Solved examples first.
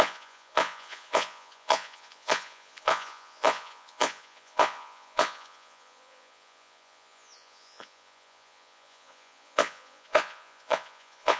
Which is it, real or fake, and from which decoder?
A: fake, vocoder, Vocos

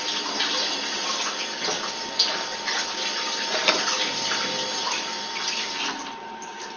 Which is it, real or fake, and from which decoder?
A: real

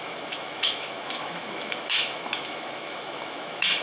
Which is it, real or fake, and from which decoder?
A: fake, autoencoder, DAC-VAE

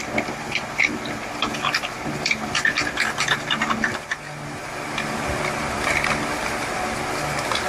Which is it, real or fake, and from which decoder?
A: fake, vocoder, BigVGAN v2